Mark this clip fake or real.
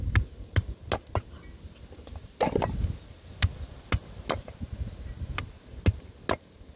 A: real